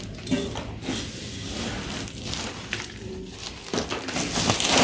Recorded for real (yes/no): yes